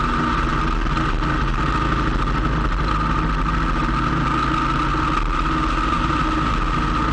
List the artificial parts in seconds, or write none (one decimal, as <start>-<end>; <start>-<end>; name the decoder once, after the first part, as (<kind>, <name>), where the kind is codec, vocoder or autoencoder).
none